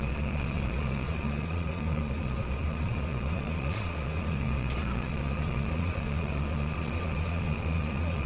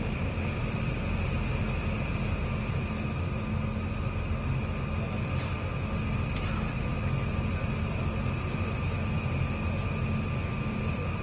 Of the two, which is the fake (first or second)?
first